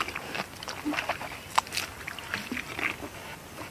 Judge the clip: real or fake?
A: real